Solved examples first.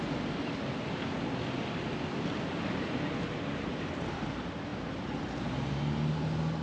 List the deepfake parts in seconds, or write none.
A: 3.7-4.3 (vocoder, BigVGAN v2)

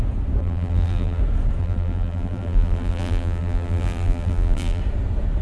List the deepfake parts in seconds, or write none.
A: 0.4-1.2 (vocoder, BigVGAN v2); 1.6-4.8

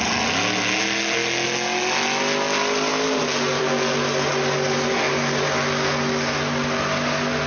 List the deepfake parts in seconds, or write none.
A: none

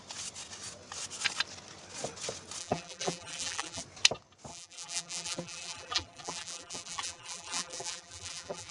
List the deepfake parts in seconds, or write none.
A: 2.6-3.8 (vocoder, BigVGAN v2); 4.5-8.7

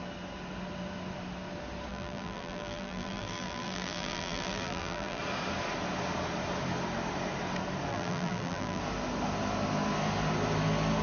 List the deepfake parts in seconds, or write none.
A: 1.9-5.2 (vocoder, BigVGAN v2); 7.9-8.8

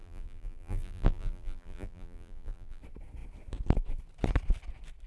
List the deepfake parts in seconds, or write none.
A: 0.0-2.8 (vocoder, BigVGAN v2)

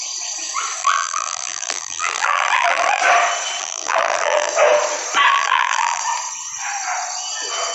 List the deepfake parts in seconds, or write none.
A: 0.8-3.0 (vocoder, BigVGAN v2); 3.6-4.5; 5.3-6.0